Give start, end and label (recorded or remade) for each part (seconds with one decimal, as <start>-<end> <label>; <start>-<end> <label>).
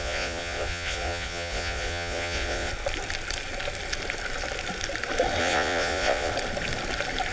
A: 0.0-2.7 remade; 2.7-5.4 recorded; 5.4-6.3 remade; 6.3-7.3 recorded